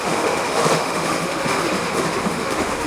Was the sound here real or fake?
fake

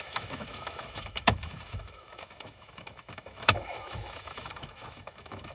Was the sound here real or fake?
fake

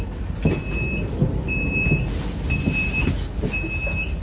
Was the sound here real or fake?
real